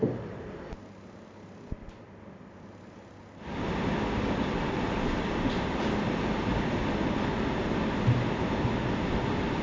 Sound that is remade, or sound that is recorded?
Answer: recorded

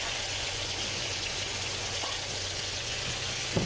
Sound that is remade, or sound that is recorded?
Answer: remade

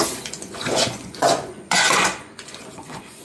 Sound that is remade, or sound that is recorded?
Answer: remade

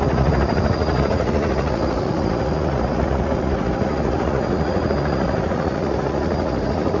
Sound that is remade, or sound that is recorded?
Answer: remade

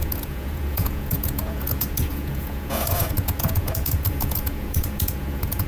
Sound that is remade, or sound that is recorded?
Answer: remade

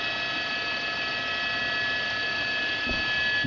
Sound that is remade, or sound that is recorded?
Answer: recorded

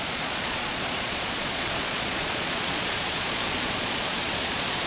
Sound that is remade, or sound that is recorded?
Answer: remade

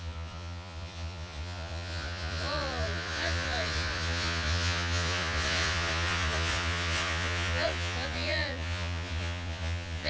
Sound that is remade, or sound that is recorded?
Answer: remade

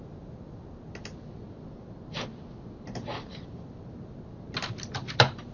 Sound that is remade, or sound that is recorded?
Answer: recorded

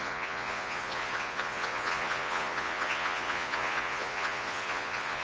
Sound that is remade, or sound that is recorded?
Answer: remade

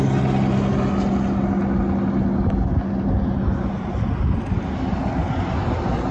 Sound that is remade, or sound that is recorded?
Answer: recorded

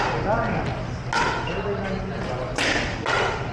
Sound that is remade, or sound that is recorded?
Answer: recorded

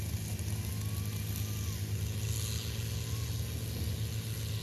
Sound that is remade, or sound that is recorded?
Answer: recorded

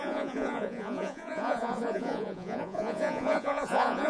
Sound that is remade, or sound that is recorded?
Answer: remade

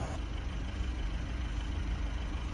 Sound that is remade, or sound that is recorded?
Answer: remade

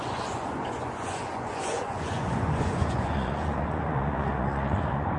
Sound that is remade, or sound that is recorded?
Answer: remade